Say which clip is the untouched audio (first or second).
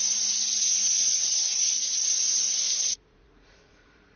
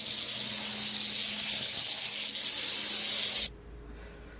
second